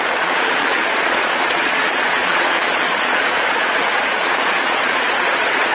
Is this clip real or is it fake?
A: fake